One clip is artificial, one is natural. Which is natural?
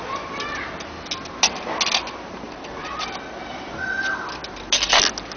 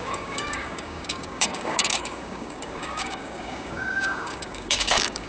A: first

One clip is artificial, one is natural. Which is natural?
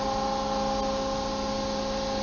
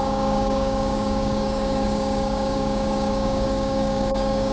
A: first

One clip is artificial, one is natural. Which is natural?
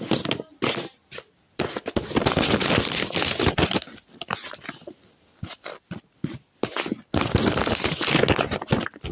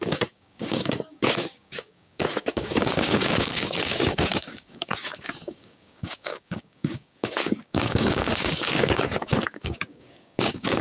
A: first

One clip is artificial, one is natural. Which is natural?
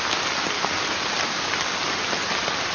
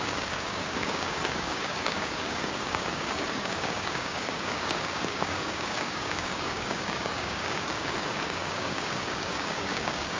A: first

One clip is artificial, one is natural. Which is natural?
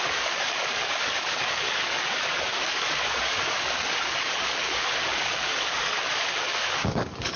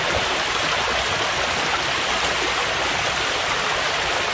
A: second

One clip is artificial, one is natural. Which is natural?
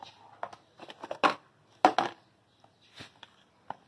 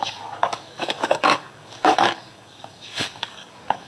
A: first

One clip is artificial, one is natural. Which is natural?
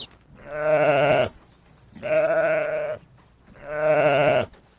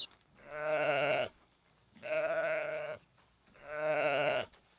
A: first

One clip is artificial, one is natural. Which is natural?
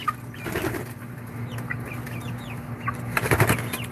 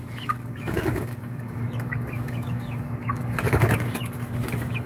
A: first